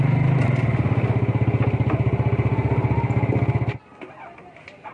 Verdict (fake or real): real